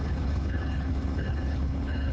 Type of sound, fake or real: fake